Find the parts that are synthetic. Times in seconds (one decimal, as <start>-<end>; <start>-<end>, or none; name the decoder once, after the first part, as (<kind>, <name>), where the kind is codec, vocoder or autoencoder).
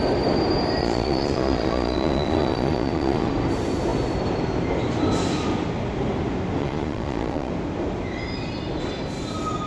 0.8-3.3 (vocoder, Vocos); 6.6-7.5